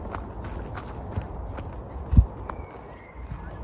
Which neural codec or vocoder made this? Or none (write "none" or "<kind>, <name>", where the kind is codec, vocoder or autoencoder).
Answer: none